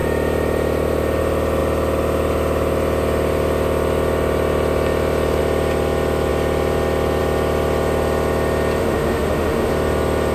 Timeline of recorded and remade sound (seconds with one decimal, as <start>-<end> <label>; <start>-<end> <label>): 0.0-8.8 recorded; 8.8-9.7 remade; 9.7-10.3 recorded